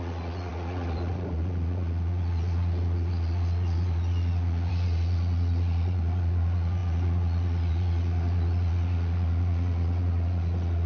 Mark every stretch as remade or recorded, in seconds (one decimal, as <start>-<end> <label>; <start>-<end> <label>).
0.0-10.9 remade